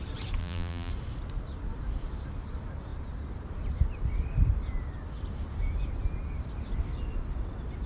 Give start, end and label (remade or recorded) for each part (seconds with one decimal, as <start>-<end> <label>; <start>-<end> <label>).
0.0-0.4 recorded; 0.4-0.9 remade; 0.9-7.9 recorded